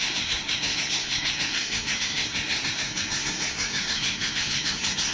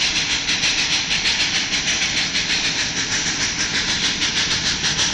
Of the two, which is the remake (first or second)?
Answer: first